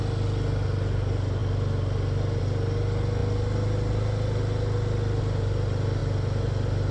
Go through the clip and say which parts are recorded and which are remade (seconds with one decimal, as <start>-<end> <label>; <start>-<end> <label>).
0.0-6.9 recorded